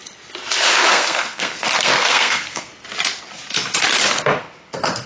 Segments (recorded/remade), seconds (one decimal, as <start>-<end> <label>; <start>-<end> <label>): 0.0-0.9 recorded; 0.9-2.7 remade; 2.7-4.4 recorded; 4.4-5.1 remade